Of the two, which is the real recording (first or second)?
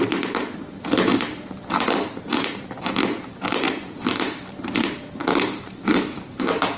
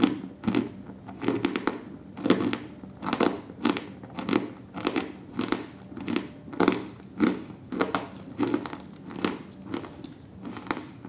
second